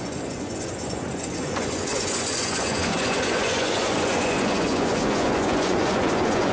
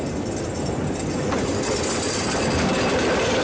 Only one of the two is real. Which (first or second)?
second